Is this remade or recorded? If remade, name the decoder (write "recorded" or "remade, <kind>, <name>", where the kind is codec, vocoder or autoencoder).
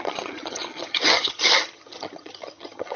remade, vocoder, HiFi-GAN